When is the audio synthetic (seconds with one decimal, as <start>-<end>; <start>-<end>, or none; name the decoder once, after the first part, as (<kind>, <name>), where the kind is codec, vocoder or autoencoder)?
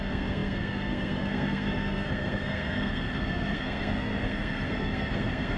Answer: 0.0-5.6 (codec, SNAC)